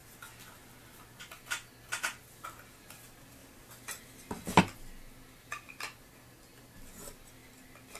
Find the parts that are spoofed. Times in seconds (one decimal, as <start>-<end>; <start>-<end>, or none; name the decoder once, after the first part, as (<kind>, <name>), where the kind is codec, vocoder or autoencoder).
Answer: none